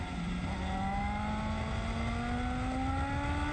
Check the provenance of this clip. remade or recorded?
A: recorded